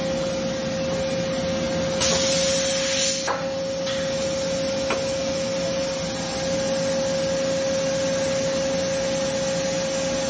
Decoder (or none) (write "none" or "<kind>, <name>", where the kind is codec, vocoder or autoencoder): none